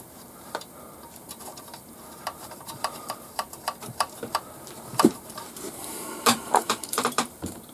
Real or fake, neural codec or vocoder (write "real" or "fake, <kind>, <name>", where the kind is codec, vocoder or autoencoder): fake, vocoder, BigVGAN v2